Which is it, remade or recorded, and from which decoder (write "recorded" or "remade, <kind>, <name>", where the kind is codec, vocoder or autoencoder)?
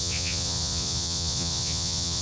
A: remade, vocoder, Vocos